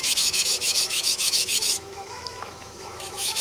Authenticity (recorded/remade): remade